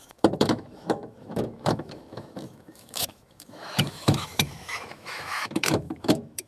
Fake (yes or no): yes